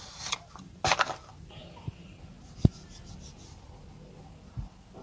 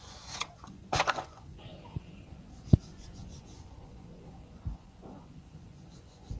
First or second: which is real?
first